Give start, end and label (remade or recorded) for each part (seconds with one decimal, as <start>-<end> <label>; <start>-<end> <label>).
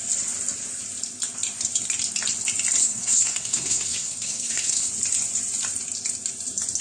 0.0-2.8 recorded; 2.8-4.9 remade; 4.9-6.8 recorded